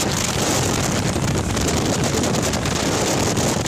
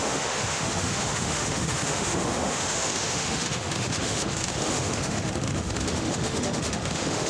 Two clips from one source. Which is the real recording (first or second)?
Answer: first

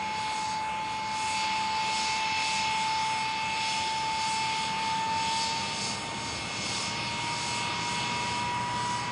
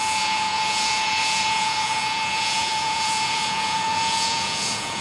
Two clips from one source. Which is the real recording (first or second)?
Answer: first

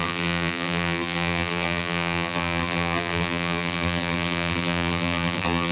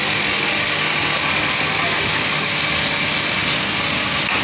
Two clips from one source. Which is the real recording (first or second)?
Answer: second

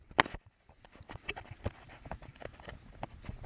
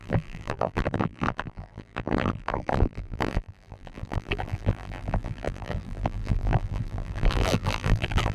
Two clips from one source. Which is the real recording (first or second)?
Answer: first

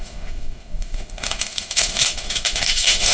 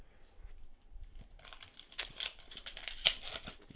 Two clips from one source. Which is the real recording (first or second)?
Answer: second